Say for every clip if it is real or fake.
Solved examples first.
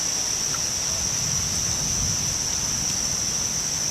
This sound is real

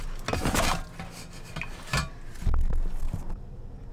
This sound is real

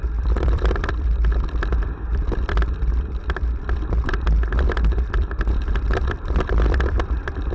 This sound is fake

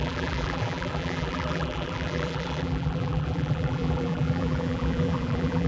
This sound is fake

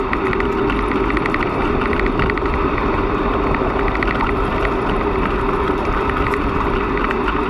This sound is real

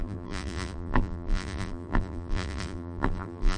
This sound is fake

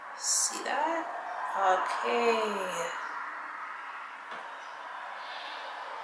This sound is real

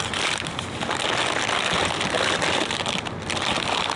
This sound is fake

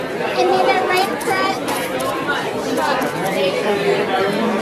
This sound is fake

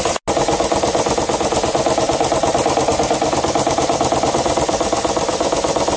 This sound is real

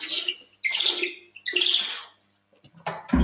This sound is real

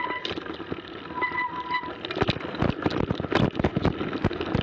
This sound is real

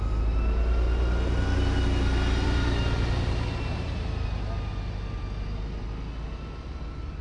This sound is real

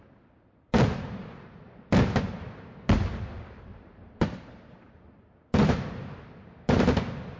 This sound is fake